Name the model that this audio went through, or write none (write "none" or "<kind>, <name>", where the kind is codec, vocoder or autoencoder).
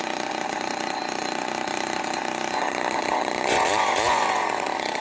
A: vocoder, Vocos